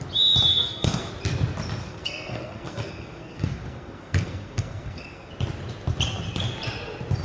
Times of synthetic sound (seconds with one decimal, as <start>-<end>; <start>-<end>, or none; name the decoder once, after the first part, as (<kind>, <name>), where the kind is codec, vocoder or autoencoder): 0.5-1.1 (codec, SNAC); 1.8-5.3